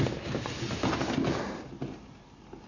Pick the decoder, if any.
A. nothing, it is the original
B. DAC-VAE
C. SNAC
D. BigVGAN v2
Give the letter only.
A